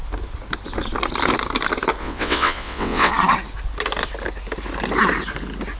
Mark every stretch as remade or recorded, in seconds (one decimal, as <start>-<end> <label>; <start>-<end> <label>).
0.0-2.0 recorded; 2.0-3.1 remade; 3.1-5.8 recorded